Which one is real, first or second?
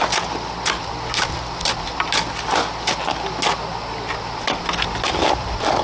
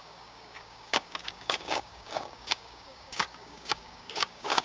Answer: first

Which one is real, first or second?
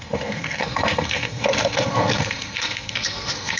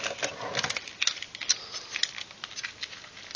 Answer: second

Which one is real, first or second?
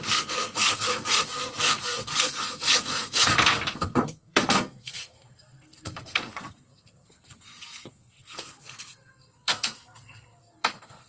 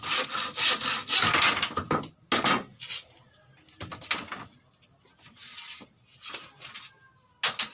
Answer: second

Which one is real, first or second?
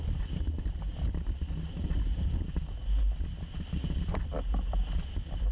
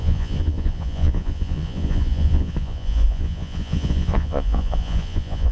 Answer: first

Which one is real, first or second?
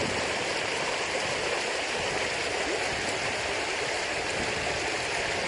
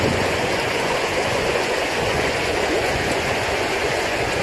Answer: first